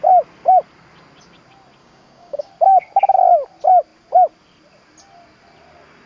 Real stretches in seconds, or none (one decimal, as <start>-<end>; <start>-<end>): 0.0-1.8; 2.5-6.1